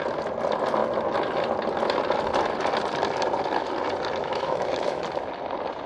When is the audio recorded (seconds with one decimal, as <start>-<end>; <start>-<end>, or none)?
0.0-4.2; 5.0-5.9